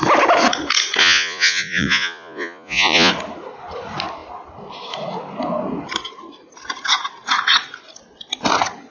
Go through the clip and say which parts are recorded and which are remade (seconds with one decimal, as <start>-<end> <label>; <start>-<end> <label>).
0.0-1.0 recorded; 1.0-3.1 remade; 3.1-8.9 recorded